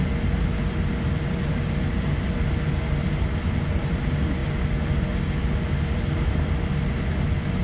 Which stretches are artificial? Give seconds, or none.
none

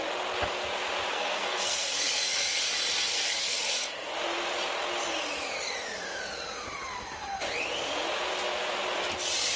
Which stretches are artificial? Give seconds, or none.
1.1-2.7 (codec, SNAC); 3.1-4.1

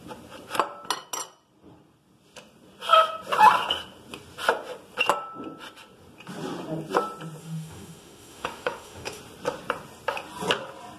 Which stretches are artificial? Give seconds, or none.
7.4-9.2 (autoencoder, DAC-VAE)

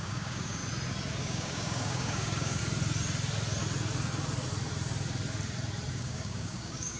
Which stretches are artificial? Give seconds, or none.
0.0-0.6 (codec, DAC); 1.2-2.6; 5.9-7.0

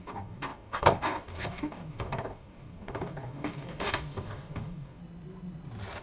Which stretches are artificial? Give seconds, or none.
0.0-5.0 (codec, DAC)

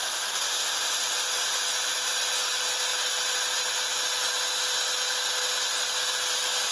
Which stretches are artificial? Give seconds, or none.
none